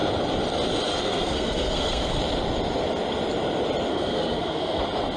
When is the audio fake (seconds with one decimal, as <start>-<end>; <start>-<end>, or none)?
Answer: 0.9-2.2; 3.9-4.8